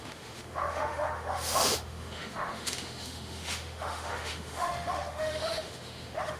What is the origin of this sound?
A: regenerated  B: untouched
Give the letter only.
A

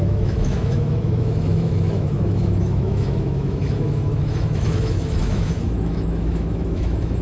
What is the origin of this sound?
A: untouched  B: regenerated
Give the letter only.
B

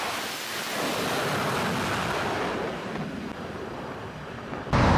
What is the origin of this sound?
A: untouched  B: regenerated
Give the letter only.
A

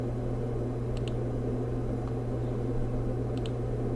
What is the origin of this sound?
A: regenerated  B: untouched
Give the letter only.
B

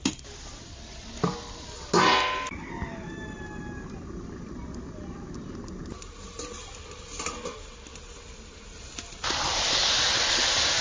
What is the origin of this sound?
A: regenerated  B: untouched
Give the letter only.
B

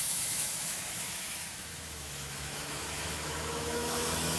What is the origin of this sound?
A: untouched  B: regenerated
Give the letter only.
B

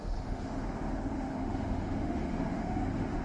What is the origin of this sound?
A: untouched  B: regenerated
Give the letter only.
B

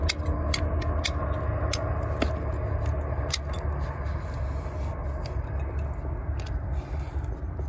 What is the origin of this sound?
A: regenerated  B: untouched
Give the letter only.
B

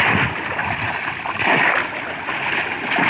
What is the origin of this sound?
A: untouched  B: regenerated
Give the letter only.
A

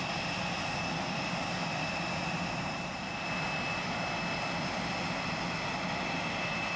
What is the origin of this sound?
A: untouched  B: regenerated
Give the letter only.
A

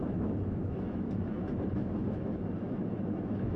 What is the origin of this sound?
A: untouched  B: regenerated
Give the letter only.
B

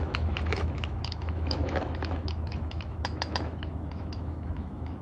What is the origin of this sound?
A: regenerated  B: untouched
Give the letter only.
A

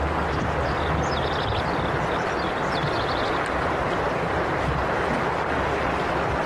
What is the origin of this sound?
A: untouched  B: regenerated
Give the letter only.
A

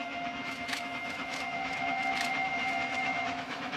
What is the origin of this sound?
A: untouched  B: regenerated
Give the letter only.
B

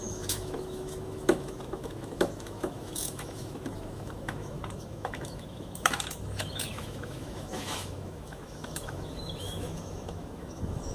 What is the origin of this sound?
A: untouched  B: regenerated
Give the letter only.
B